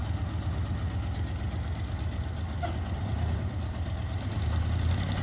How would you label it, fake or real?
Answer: real